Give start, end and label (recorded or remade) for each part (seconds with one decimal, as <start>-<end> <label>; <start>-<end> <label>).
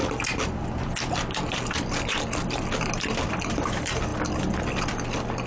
0.0-5.5 recorded